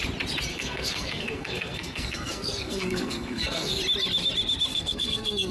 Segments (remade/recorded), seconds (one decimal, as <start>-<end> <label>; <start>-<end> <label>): 0.0-0.5 recorded; 0.5-3.8 remade; 3.8-4.7 recorded; 4.7-5.5 remade